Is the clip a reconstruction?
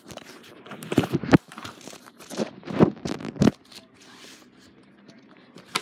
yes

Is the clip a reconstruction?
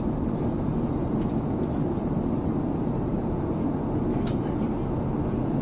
no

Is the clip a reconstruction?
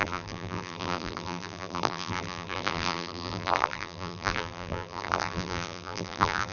yes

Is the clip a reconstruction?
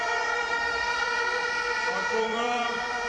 yes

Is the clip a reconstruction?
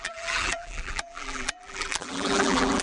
yes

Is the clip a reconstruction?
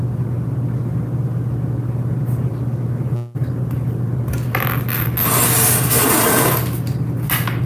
no